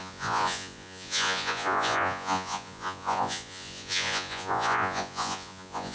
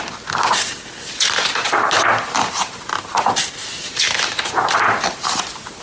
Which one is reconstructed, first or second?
first